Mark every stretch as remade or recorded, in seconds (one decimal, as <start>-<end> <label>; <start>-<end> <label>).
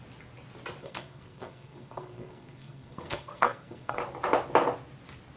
0.0-0.8 recorded; 0.8-4.0 remade; 4.0-5.4 recorded